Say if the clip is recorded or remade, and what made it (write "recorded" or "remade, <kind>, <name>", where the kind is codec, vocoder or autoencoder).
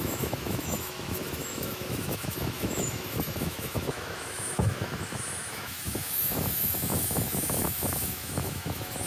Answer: remade, autoencoder, DAC-VAE